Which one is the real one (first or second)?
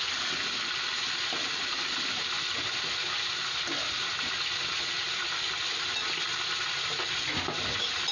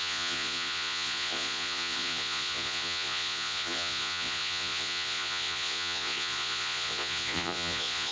first